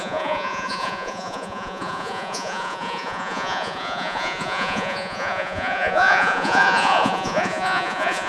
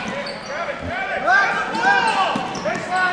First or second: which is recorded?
second